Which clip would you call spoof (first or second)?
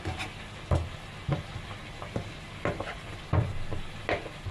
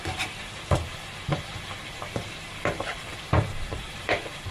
second